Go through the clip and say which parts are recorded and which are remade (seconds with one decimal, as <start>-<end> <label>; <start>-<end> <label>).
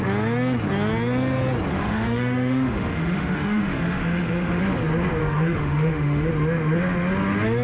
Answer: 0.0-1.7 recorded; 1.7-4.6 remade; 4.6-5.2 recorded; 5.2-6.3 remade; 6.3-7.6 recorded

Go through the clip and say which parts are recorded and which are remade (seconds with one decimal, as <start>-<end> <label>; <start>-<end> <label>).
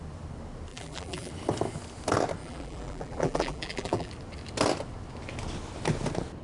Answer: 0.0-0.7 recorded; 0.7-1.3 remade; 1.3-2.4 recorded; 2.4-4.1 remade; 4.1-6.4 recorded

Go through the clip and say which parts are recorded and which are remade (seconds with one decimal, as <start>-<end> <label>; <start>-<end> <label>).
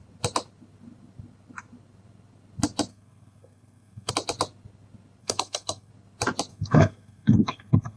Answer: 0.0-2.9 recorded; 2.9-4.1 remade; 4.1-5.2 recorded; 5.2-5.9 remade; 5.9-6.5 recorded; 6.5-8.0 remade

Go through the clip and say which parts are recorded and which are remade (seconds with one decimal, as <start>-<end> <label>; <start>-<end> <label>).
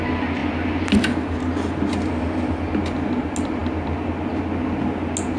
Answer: 0.0-5.4 recorded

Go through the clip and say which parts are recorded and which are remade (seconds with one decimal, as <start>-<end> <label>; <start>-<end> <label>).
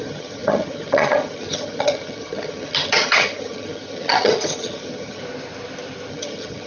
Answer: 0.0-5.2 remade; 5.2-6.1 recorded; 6.1-6.7 remade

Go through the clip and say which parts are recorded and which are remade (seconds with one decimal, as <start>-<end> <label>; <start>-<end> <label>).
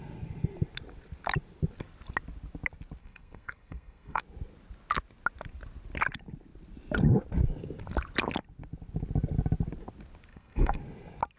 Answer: 0.0-3.0 recorded; 3.0-4.2 remade; 4.2-10.3 recorded; 10.3-10.8 remade; 10.8-11.4 recorded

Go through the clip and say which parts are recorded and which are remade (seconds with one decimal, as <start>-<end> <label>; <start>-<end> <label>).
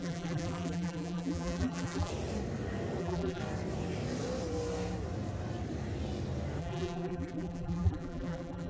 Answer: 0.0-2.1 remade; 2.1-3.0 recorded; 3.0-3.4 remade; 3.4-6.6 recorded; 6.6-8.7 remade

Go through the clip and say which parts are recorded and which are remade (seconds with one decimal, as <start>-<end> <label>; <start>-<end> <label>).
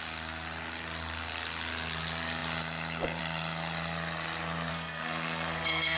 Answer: 0.0-4.7 recorded; 4.7-6.0 remade